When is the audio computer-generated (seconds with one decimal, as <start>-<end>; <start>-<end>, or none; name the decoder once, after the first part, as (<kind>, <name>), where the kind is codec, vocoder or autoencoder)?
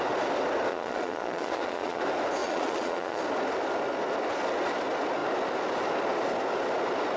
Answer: 0.7-2.0 (vocoder, Vocos); 2.4-3.2